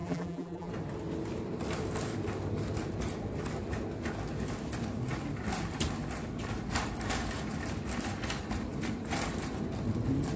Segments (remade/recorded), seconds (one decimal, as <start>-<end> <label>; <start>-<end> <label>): 0.0-0.7 remade; 0.7-10.4 recorded